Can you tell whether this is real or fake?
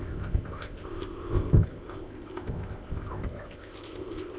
fake